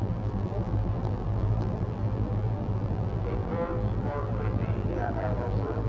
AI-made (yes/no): yes